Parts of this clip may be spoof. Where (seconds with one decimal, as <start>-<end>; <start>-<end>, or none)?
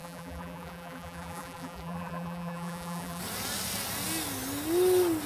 0.0-3.2